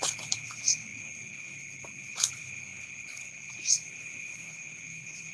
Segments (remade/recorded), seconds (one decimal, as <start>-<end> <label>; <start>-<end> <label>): 0.0-5.3 remade